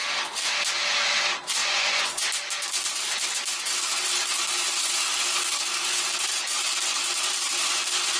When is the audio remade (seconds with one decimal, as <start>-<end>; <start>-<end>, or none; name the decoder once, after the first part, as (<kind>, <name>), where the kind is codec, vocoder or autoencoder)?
1.6-2.2 (vocoder, Vocos)